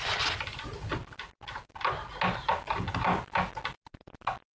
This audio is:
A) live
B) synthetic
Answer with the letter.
A